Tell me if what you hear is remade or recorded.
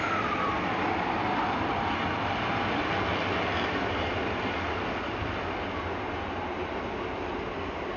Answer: recorded